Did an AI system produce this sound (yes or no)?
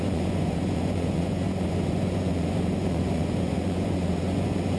yes